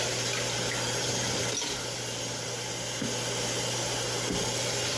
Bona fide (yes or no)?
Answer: yes